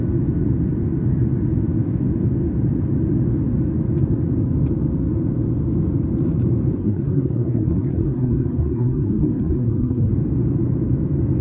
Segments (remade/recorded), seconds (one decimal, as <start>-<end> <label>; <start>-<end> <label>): 0.0-6.8 recorded; 6.8-10.1 remade; 10.1-11.4 recorded